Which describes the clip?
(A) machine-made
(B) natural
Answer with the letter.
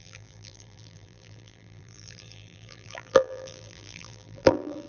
A